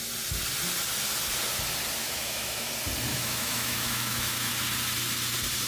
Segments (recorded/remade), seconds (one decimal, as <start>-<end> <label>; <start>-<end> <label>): 0.0-2.0 recorded; 2.0-2.7 remade; 2.7-3.1 recorded; 3.1-4.5 remade; 4.5-5.7 recorded